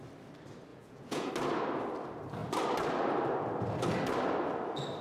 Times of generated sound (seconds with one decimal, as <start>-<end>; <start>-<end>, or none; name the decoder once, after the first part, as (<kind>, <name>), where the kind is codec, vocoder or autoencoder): 0.7-1.3 (vocoder, Vocos)